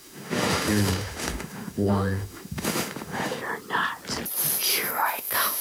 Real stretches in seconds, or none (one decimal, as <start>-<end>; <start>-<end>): 3.4-4.7